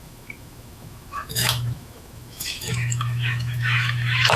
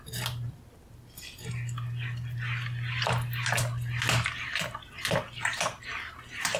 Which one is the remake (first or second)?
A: first